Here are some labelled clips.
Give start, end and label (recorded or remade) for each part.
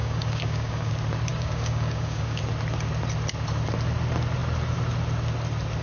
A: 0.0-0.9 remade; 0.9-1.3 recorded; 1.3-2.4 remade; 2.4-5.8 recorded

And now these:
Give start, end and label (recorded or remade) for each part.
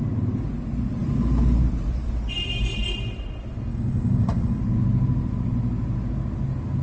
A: 0.0-3.7 recorded; 3.7-4.6 remade; 4.6-6.8 recorded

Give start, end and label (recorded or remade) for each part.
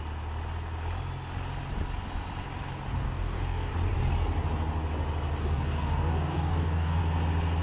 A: 0.0-3.0 recorded; 3.0-3.7 remade; 3.7-5.4 recorded; 5.4-7.0 remade; 7.0-7.6 recorded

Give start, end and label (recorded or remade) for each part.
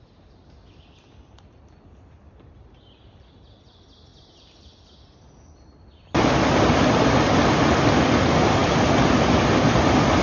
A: 0.0-10.2 recorded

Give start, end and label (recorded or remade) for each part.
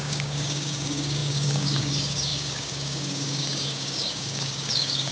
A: 0.0-5.1 remade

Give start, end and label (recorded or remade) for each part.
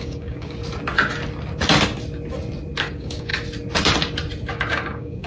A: 0.0-0.6 remade; 0.6-2.8 recorded; 2.8-3.3 remade; 3.3-4.5 recorded; 4.5-5.3 remade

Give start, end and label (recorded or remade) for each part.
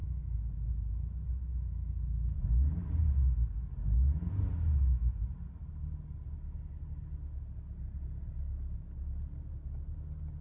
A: 0.0-10.4 recorded